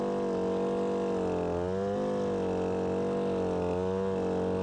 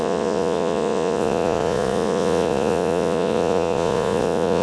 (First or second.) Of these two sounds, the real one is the first